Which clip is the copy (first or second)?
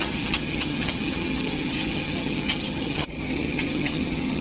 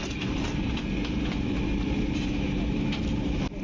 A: first